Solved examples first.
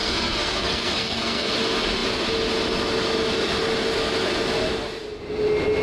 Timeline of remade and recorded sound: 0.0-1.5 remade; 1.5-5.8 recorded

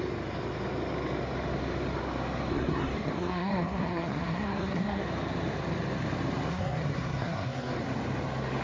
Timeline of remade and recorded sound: 0.0-2.5 recorded; 2.5-5.0 remade; 5.0-6.5 recorded; 6.5-7.8 remade; 7.8-8.6 recorded